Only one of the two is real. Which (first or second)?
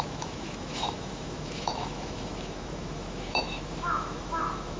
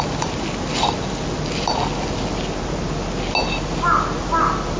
second